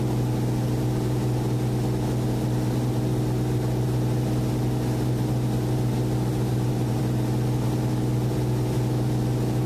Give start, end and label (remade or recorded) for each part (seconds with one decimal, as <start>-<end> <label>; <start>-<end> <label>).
0.0-6.5 recorded; 6.5-7.0 remade; 7.0-9.7 recorded